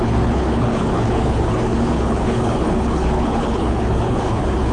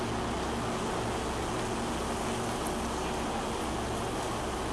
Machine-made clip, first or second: first